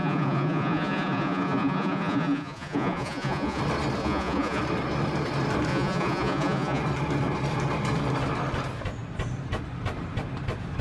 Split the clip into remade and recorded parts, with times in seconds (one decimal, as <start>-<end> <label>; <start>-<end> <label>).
0.0-3.6 remade; 3.6-4.0 recorded; 4.0-4.6 remade; 4.6-5.7 recorded; 5.7-6.8 remade; 6.8-10.8 recorded